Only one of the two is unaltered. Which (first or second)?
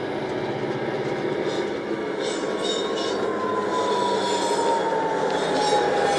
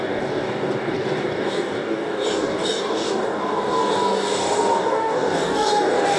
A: first